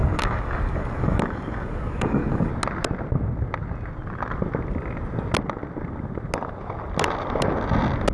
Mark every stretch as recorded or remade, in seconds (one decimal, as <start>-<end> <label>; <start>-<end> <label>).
0.0-2.5 remade; 2.5-8.1 recorded

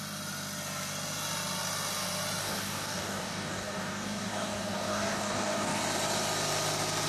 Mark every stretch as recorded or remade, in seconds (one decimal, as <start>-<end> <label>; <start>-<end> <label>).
0.0-2.4 recorded; 2.4-5.8 remade; 5.8-7.1 recorded

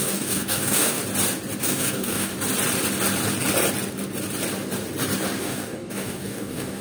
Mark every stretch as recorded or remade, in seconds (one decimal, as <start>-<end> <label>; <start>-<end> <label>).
0.0-1.0 remade; 1.0-1.6 recorded; 1.6-2.3 remade; 2.3-5.4 recorded; 5.4-6.8 remade

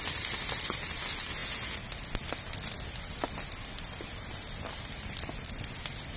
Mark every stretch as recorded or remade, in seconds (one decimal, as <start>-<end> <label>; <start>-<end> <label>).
0.0-6.2 recorded

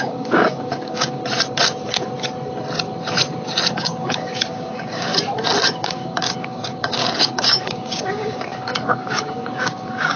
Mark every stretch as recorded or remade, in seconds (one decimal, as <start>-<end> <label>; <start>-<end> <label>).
0.0-1.2 remade; 1.2-3.7 recorded; 3.7-5.1 remade; 5.1-5.7 recorded; 5.7-10.2 remade

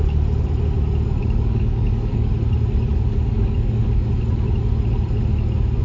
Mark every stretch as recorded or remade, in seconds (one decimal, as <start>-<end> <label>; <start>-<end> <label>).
0.0-1.2 recorded; 1.2-2.3 remade; 2.3-2.9 recorded; 2.9-4.1 remade; 4.1-5.8 recorded

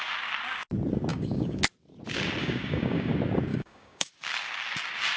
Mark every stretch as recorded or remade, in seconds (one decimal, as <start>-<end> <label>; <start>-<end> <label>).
0.0-1.1 recorded; 1.1-1.6 remade; 1.6-2.4 recorded; 2.4-3.1 remade; 3.1-3.5 recorded; 3.5-4.1 remade; 4.1-5.2 recorded